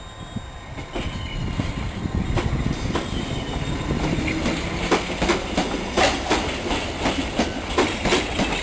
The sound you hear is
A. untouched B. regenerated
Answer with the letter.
A